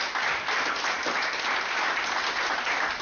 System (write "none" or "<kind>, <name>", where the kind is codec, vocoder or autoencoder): none